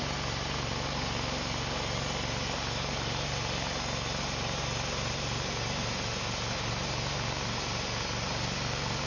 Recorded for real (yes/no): yes